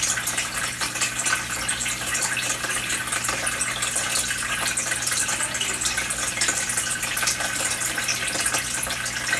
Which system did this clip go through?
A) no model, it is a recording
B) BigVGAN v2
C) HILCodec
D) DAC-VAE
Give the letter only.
A